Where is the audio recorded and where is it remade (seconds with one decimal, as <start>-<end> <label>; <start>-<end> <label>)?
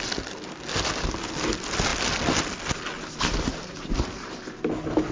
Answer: 0.0-5.1 recorded